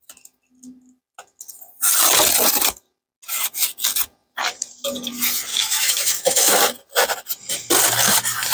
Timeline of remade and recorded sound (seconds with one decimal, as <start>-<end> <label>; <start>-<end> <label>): 0.0-5.5 recorded; 5.5-6.6 remade; 6.6-8.5 recorded